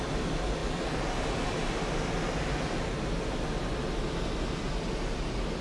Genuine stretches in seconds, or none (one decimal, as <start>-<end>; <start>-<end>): 0.0-5.6